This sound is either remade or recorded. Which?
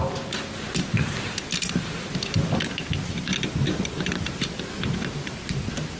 recorded